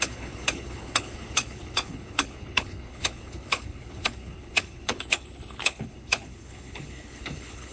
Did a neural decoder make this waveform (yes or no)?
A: yes